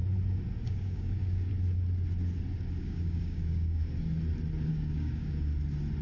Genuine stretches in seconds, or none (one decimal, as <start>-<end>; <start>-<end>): 0.0-0.6; 1.5-2.8; 3.8-4.7; 5.5-6.0